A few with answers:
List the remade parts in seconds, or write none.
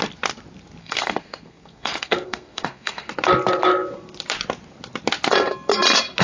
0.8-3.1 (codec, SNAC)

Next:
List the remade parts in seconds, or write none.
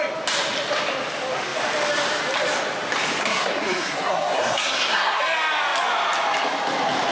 3.2-5.2 (codec, SNAC)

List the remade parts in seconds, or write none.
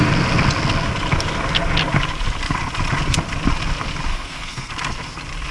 4.1-4.7 (codec, SNAC)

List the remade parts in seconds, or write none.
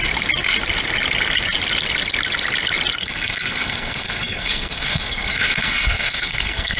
3.0-6.8 (codec, SNAC)